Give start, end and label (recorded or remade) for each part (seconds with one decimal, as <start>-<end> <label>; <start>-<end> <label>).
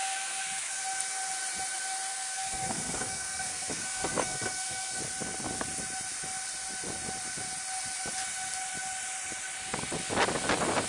0.0-0.8 remade; 0.8-2.1 recorded; 2.1-5.0 remade; 5.0-10.9 recorded